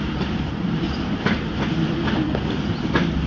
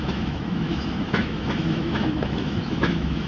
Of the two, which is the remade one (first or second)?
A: second